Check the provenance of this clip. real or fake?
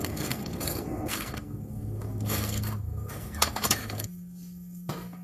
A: fake